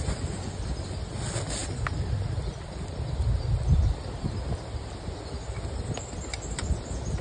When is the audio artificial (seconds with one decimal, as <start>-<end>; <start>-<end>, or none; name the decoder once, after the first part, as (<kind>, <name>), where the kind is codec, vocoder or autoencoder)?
none